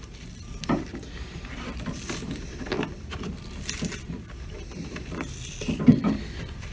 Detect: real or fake fake